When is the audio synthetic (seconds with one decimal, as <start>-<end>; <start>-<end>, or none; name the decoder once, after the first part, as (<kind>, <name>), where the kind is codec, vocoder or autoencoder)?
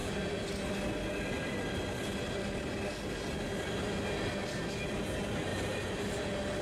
5.5-6.0 (vocoder, BigVGAN v2)